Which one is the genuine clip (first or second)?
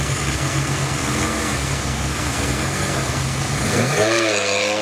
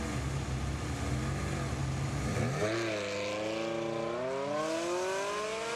second